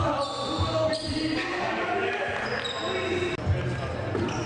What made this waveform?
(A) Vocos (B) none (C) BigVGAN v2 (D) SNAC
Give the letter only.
B